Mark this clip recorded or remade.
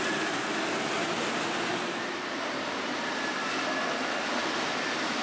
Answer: recorded